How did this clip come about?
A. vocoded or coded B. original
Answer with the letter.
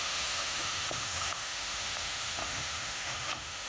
A